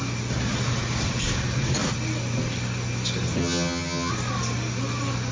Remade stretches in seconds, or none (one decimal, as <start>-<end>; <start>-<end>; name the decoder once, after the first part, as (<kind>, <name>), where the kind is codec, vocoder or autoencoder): 3.4-4.1 (vocoder, HiFi-GAN)